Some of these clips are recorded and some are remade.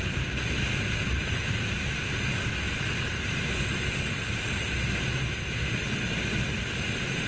recorded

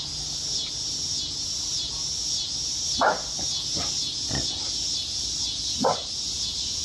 recorded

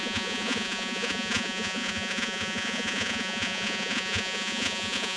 remade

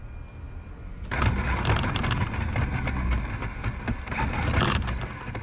recorded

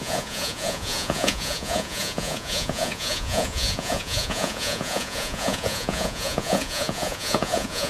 remade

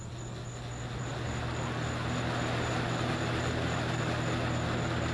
recorded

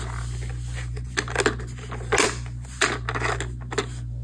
recorded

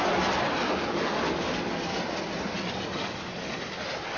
recorded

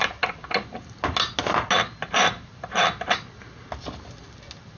recorded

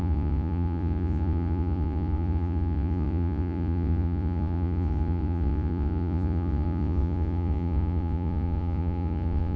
remade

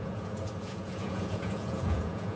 remade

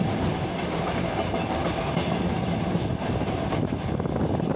recorded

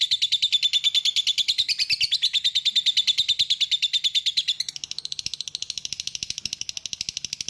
recorded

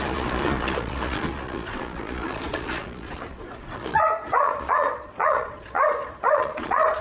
remade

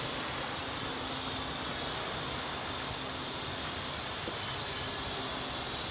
recorded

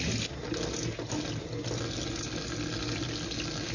recorded